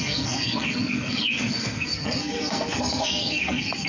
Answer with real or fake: fake